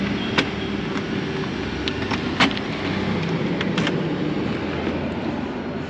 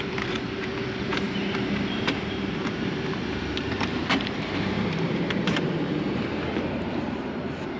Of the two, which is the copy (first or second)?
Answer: second